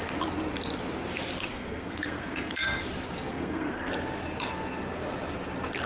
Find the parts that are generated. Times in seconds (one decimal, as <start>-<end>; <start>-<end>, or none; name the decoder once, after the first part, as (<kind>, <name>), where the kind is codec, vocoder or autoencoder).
1.5-2.8 (codec, SNAC); 3.3-3.9